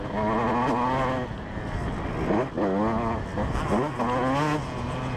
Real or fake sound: real